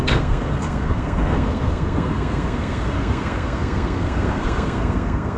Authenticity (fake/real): fake